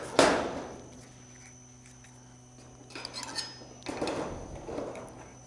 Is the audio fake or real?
real